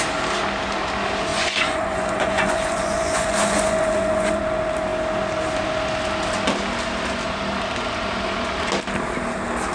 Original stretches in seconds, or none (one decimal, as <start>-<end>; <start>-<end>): 0.0-1.3; 4.4-9.7